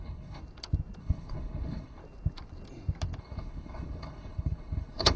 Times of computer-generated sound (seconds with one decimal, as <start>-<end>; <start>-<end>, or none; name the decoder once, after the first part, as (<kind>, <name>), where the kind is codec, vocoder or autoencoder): 0.0-0.4 (codec, HILCodec); 1.0-2.0; 3.2-5.2